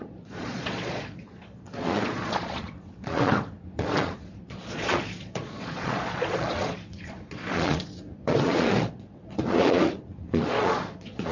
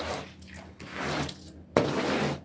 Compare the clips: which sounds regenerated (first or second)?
first